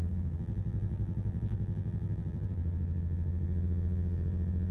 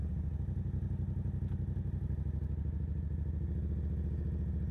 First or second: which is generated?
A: first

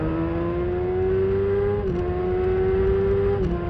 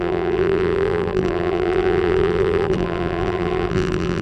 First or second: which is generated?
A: second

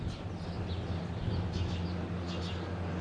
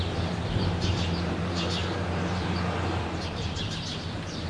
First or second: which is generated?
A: second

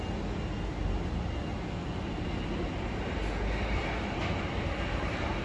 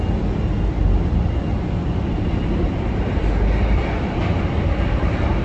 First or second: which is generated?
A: second